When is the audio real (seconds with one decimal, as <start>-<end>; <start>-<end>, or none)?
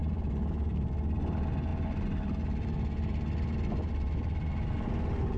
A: 0.9-5.4